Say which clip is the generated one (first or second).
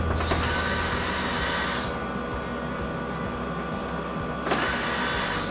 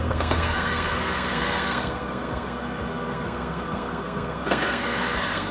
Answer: second